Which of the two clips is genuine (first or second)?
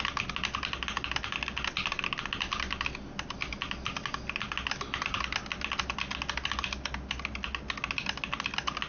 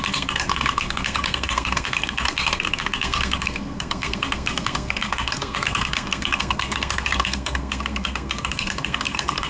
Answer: first